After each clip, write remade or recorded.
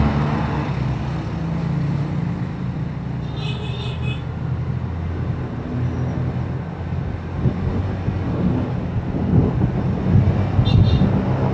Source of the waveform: recorded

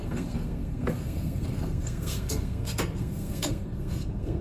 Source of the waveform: remade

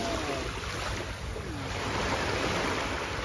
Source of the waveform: recorded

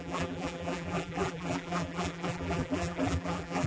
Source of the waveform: remade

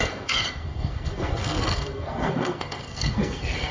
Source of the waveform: remade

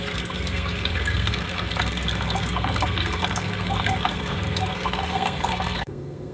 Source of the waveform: remade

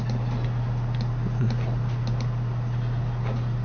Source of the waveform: recorded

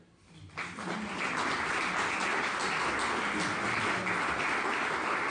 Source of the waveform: recorded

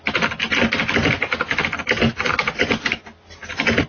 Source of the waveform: recorded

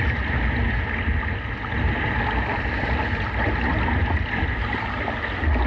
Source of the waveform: recorded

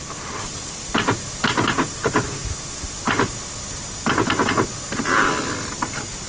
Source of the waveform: recorded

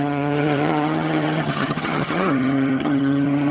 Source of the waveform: remade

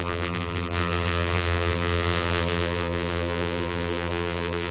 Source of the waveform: remade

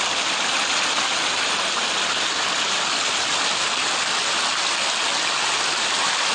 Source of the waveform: recorded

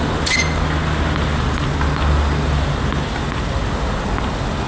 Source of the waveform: recorded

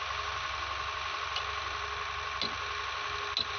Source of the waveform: recorded